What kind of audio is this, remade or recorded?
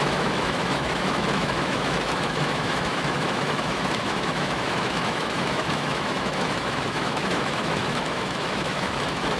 remade